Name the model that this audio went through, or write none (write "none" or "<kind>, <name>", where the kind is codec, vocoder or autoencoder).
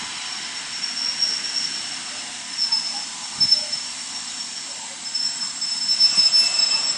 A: none